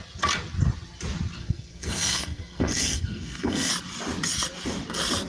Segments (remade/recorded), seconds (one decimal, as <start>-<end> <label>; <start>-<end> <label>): 0.0-1.4 recorded; 1.4-3.7 remade; 3.7-5.3 recorded